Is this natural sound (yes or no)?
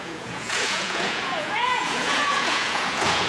no